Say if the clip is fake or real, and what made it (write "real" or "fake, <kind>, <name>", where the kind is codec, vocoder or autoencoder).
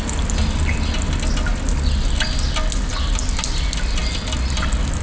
real